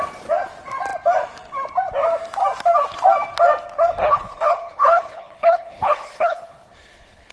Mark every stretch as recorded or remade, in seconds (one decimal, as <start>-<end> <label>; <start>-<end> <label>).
0.0-4.0 recorded; 4.0-7.3 remade